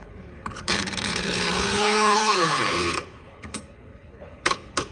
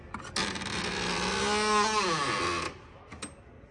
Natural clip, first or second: second